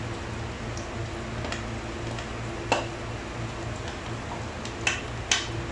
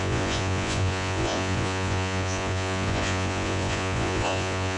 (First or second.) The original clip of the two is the first